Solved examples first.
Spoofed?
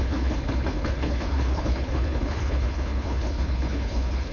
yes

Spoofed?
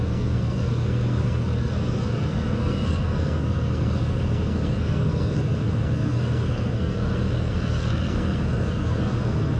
yes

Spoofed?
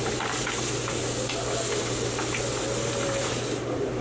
no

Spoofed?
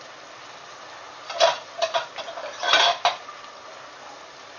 no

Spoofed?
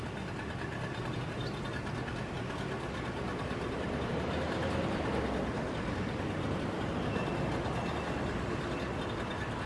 no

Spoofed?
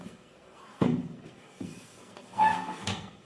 yes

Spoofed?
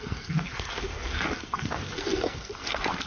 yes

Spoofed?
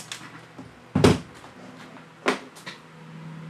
no